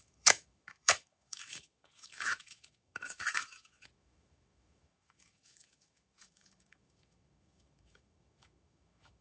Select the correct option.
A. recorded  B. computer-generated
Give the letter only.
B